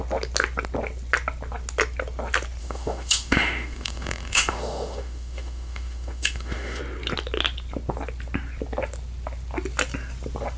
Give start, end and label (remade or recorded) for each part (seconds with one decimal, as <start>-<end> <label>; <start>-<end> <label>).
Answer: 0.0-2.6 recorded; 2.6-6.8 remade; 6.8-10.6 recorded